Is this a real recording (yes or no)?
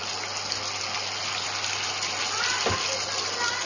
yes